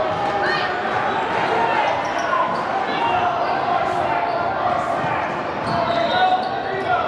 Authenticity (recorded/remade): recorded